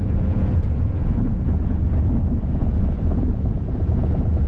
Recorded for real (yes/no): no